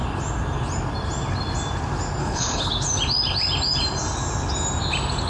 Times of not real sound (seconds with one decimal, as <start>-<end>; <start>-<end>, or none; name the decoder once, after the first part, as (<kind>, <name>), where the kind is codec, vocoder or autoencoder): 2.2-2.7 (codec, HILCodec)